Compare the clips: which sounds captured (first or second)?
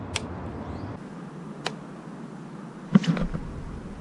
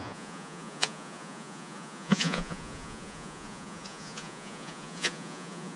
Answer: first